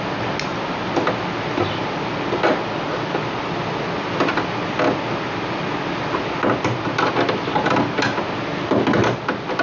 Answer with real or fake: real